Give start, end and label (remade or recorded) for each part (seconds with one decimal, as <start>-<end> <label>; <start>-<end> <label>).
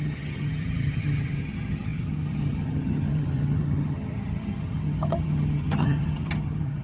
0.0-6.8 remade